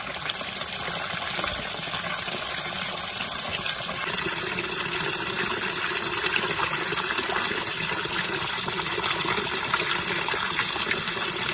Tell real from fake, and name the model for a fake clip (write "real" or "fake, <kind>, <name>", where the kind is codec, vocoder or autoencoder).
real